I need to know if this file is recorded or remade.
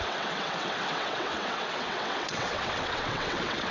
remade